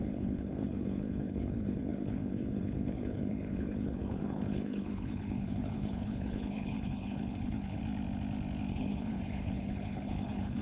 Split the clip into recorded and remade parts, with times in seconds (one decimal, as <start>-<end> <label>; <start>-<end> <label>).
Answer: 0.0-7.8 remade; 7.8-8.7 recorded; 8.7-10.6 remade